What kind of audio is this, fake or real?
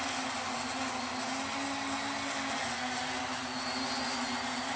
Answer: real